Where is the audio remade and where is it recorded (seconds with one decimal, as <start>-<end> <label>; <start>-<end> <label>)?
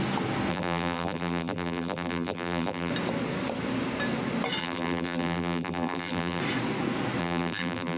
0.0-0.5 recorded; 0.5-2.9 remade; 2.9-4.6 recorded; 4.6-6.4 remade; 6.4-7.2 recorded; 7.2-8.0 remade